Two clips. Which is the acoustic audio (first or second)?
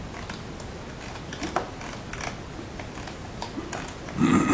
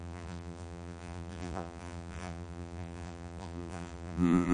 first